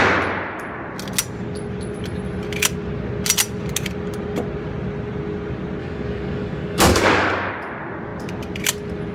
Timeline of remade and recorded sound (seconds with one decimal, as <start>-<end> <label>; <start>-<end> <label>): 0.0-5.8 recorded; 5.8-7.5 remade; 7.5-9.1 recorded